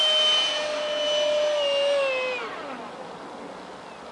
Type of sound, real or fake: real